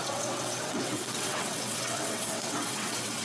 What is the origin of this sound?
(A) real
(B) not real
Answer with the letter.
B